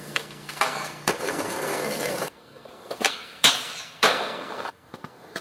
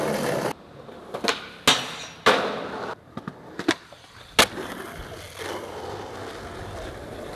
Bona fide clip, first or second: second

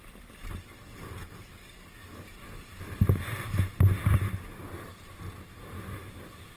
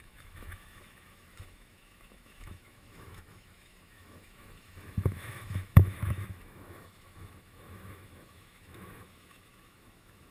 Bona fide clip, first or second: first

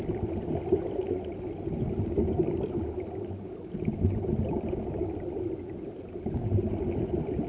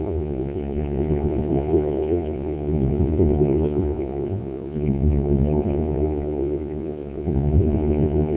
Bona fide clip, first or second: first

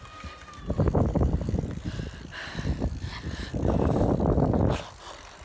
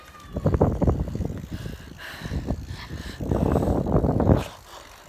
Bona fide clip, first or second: second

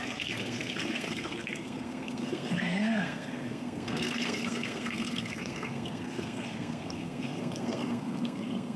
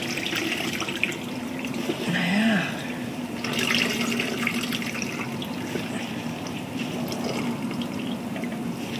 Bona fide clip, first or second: second